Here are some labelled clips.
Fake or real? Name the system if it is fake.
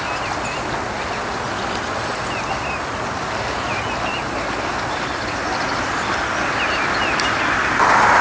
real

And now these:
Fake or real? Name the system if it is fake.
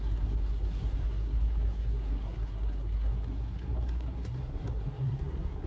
fake, codec, SNAC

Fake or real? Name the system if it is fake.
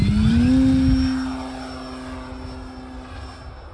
real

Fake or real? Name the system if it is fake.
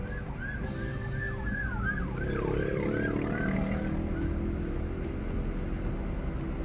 real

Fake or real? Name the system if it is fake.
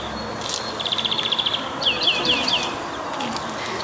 real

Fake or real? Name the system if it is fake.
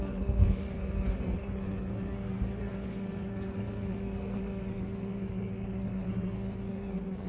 fake, codec, SNAC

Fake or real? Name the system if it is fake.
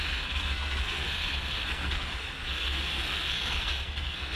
fake, codec, SNAC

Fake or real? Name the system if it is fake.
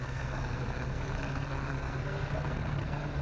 fake, codec, SNAC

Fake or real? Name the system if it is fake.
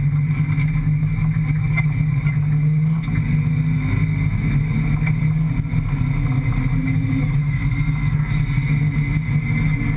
real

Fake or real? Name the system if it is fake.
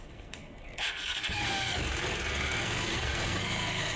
fake, codec, SNAC